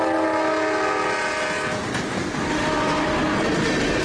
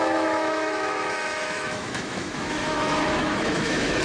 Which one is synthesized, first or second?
second